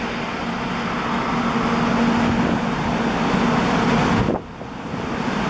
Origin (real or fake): real